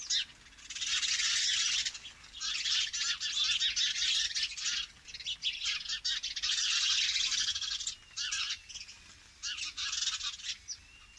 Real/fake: real